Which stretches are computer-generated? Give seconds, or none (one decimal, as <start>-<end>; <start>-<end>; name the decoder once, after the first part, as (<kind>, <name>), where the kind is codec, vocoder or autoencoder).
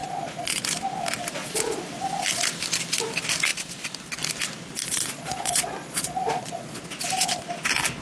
0.0-0.6 (vocoder, Vocos); 1.4-1.9; 4.8-6.8